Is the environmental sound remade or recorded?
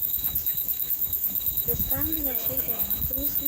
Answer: remade